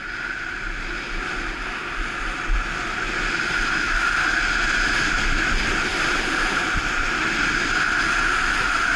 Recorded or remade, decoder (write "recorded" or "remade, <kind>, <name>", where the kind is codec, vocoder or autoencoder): recorded